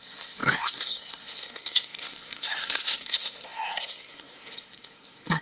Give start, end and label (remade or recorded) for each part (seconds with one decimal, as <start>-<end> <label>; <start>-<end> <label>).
0.0-5.4 remade